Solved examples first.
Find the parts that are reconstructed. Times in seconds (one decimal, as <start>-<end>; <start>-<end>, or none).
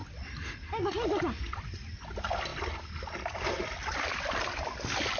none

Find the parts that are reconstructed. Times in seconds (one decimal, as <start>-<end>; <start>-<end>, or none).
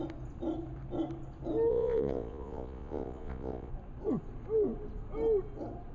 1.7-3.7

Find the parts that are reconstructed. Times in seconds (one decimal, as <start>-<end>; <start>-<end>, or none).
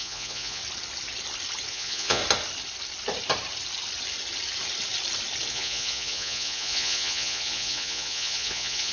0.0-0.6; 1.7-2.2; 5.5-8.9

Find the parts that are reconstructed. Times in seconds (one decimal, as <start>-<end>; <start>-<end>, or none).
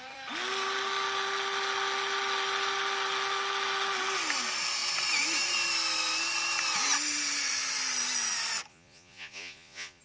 8.7-10.0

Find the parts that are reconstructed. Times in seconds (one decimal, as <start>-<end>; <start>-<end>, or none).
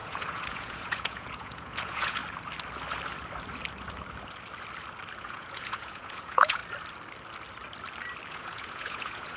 0.0-2.2; 5.2-6.6; 8.3-9.4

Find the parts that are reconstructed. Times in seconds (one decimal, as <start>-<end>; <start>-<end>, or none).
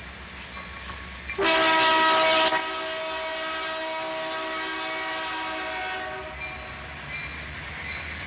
none